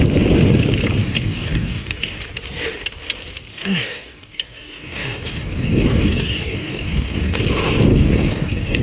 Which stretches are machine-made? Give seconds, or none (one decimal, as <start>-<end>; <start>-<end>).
1.0-2.2; 3.5-7.4; 7.9-8.8